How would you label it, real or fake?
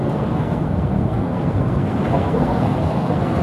fake